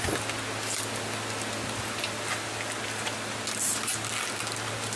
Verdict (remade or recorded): recorded